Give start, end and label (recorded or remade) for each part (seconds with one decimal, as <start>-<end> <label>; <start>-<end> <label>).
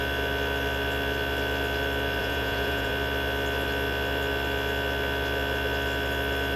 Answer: 0.0-2.2 recorded; 2.2-2.9 remade; 2.9-6.6 recorded